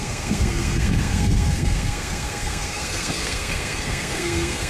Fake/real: fake